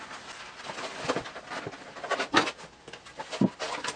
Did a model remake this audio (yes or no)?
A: no